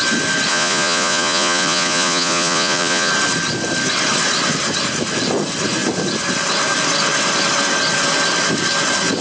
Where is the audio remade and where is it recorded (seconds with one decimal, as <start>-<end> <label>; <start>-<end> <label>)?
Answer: 0.0-0.5 recorded; 0.5-3.1 remade; 3.1-9.2 recorded